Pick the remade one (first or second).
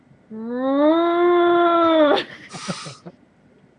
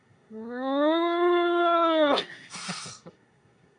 second